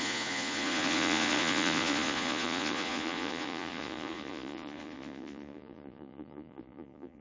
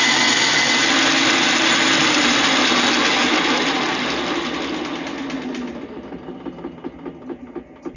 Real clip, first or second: second